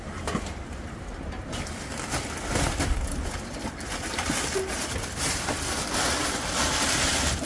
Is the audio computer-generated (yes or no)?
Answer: no